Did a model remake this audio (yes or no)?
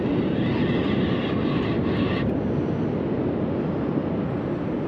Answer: no